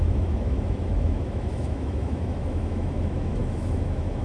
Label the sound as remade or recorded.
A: remade